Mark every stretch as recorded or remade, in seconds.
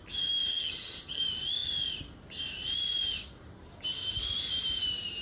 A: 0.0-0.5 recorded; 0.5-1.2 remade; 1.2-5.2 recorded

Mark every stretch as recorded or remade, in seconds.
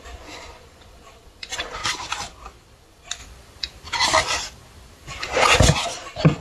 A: 0.0-1.8 remade; 1.8-2.8 recorded; 2.8-3.2 remade; 3.2-5.6 recorded; 5.6-6.4 remade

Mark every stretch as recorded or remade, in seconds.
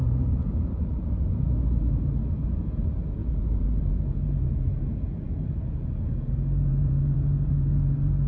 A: 0.0-8.3 remade